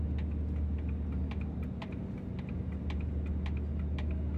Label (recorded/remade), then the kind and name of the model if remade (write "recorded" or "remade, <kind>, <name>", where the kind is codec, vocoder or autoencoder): recorded